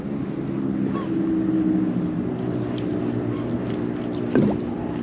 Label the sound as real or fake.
real